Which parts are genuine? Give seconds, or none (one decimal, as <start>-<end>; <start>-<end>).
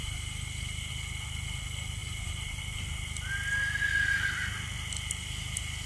0.9-2.0; 2.6-5.9